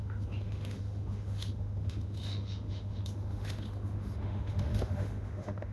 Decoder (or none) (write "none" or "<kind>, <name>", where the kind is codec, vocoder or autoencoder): autoencoder, DAC-VAE